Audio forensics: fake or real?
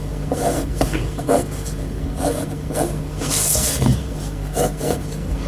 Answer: fake